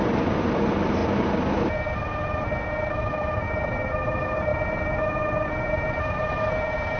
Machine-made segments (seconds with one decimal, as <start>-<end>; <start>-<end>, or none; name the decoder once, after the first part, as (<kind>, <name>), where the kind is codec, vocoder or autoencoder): none